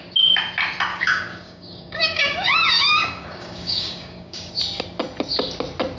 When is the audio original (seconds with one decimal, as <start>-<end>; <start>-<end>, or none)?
0.0-0.9; 4.5-6.0